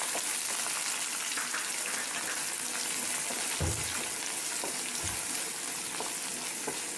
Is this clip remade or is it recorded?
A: recorded